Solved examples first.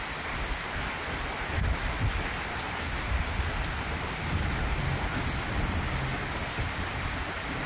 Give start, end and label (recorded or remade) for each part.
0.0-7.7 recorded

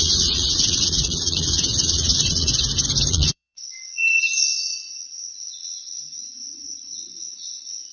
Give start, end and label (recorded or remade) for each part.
0.0-2.5 remade; 2.5-3.1 recorded; 3.1-7.9 remade